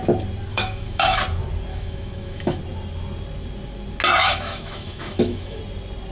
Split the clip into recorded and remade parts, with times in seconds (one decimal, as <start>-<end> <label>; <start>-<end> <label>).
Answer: 0.0-0.5 recorded; 0.5-1.2 remade; 1.2-1.7 recorded; 1.7-2.6 remade; 2.6-4.2 recorded; 4.2-5.6 remade; 5.6-6.1 recorded